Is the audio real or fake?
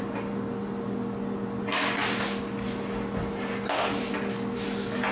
real